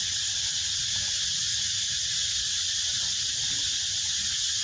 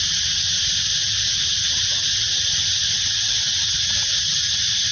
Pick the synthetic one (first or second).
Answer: first